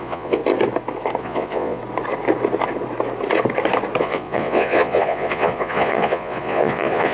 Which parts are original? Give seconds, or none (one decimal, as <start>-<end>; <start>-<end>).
0.4-1.2; 1.8-4.0